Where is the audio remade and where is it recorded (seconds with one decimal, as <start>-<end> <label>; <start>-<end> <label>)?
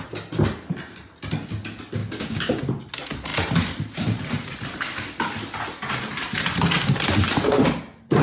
0.0-2.0 recorded; 2.0-2.6 remade; 2.6-8.2 recorded